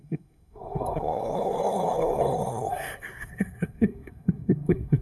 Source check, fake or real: fake